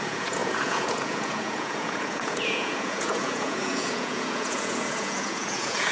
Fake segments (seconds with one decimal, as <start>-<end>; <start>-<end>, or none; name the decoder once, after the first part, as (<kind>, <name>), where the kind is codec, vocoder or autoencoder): 0.0-5.9 (vocoder, Vocos)